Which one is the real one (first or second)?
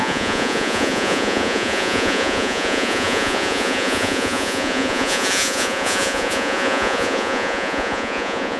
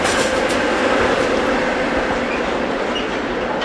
second